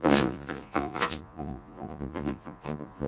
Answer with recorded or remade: remade